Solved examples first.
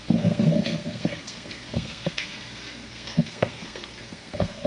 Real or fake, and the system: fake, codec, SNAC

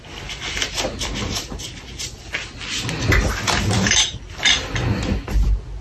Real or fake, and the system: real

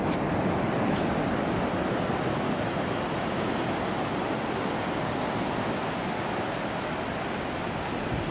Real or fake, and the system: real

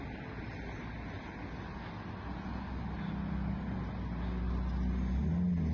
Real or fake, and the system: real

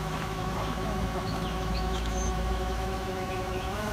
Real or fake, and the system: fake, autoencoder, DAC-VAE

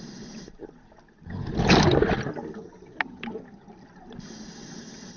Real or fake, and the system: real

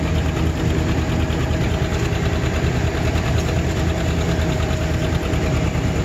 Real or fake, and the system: real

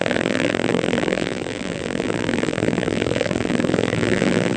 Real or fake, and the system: fake, vocoder, BigVGAN v2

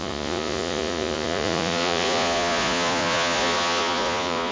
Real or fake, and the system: fake, vocoder, Vocos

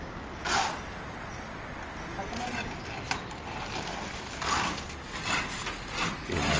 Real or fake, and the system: real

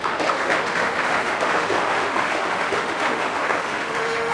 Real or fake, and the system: fake, autoencoder, DAC-VAE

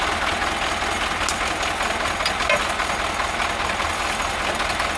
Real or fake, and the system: real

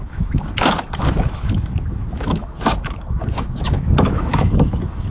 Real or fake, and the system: fake, autoencoder, DAC-VAE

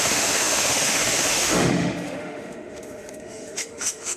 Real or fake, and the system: fake, autoencoder, DAC-VAE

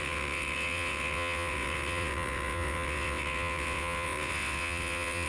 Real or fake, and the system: fake, vocoder, WaveNeXt